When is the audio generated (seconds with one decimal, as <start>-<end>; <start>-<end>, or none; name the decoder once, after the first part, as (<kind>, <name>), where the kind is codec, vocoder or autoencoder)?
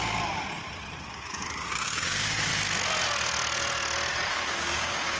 1.1-2.5 (codec, DAC); 4.3-5.2